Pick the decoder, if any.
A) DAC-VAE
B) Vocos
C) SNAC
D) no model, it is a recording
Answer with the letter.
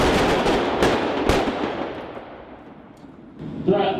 D